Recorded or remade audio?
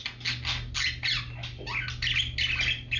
recorded